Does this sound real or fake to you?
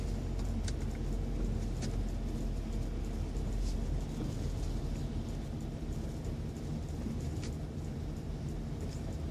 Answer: real